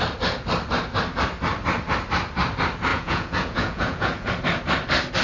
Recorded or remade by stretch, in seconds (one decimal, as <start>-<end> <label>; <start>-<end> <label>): 0.0-2.9 recorded; 2.9-4.3 remade; 4.3-5.2 recorded